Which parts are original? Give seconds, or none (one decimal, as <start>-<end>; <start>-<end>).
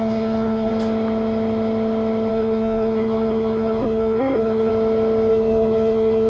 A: 0.7-2.3; 4.7-5.3